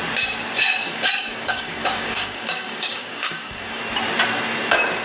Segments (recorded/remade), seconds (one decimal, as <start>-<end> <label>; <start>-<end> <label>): 0.0-0.8 recorded; 0.8-3.8 remade; 3.8-5.0 recorded